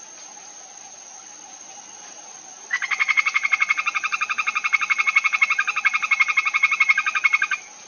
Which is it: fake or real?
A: real